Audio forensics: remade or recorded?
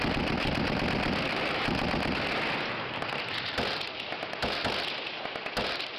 recorded